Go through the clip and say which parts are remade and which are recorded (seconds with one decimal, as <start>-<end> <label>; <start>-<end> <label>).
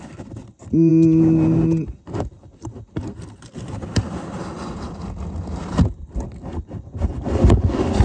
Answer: 0.0-8.0 recorded